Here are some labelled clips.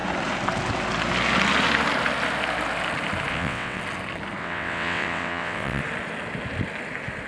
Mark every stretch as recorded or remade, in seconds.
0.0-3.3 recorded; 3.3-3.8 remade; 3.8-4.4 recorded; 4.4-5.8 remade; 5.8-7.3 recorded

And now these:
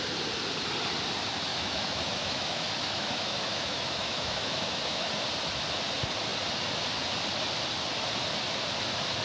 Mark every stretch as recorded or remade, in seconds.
0.0-1.5 recorded; 1.5-5.1 remade; 5.1-9.2 recorded

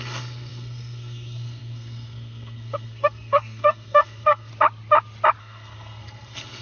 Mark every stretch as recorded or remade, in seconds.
0.0-4.5 remade; 4.5-5.4 recorded; 5.4-6.6 remade